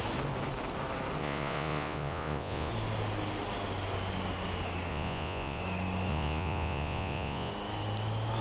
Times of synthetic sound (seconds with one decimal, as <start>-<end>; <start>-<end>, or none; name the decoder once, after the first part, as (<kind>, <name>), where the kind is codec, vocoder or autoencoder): 1.2-2.7 (vocoder, Vocos); 4.9-5.6; 6.1-7.5